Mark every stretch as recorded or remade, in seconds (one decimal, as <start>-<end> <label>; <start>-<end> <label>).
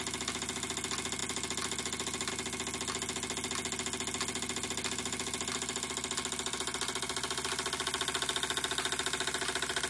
0.0-9.9 recorded